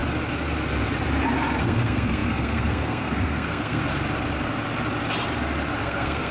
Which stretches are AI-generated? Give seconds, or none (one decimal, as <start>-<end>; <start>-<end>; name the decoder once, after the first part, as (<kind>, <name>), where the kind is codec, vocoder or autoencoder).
1.6-3.8 (codec, SNAC); 5.8-6.3